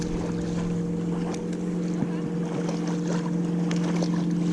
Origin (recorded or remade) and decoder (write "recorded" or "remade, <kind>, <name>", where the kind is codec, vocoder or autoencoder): recorded